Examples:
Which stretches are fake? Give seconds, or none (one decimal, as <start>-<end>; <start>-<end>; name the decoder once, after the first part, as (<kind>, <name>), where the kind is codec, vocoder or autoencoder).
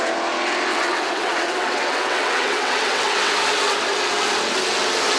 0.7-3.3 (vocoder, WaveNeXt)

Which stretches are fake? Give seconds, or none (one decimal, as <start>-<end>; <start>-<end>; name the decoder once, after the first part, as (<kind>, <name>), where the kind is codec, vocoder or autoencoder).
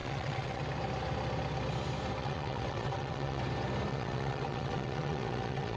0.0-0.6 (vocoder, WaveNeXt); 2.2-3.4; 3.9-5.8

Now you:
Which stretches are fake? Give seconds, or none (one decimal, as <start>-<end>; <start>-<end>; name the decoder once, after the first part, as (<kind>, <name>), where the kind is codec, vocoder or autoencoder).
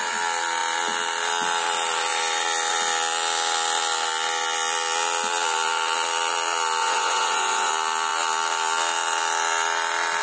6.8-7.7 (vocoder, WaveNeXt)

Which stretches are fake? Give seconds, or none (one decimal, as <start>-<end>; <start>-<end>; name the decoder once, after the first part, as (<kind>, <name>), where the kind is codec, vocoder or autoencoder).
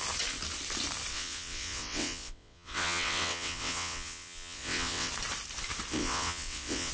1.1-5.1 (vocoder, WaveNeXt); 5.9-6.9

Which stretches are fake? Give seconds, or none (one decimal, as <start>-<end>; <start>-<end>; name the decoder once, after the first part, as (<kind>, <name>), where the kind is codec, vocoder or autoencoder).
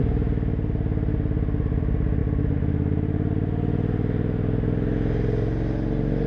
none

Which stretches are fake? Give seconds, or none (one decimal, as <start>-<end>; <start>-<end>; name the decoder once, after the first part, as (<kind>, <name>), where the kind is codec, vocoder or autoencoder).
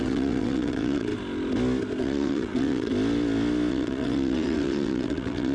0.0-1.1 (vocoder, WaveNeXt); 2.0-2.9; 3.7-5.5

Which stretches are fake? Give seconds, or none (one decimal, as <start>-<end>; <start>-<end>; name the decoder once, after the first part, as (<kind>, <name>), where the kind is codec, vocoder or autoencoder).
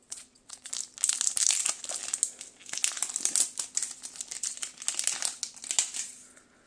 0.0-0.7 (vocoder, WaveNeXt)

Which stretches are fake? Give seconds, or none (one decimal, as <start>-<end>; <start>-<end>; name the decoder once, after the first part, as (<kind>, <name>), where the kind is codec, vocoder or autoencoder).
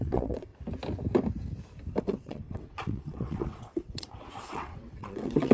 0.0-0.5 (vocoder, WaveNeXt); 2.0-5.5